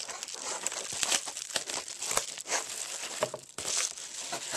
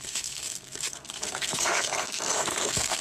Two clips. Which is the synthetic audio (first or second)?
second